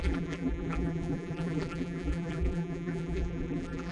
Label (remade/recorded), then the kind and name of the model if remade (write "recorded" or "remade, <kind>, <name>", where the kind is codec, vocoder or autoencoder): remade, vocoder, BigVGAN v2